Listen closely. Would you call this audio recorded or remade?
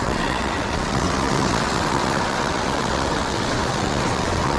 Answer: remade